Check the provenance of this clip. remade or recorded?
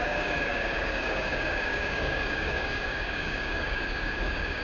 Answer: remade